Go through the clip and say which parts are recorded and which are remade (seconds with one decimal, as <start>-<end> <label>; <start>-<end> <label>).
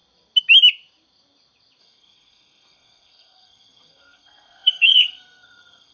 0.0-1.8 recorded; 1.8-5.9 remade